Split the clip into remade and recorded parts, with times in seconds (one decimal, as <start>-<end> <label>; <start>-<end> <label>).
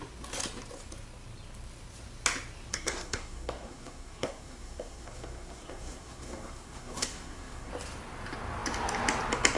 0.0-2.7 recorded; 2.7-7.7 remade; 7.7-9.6 recorded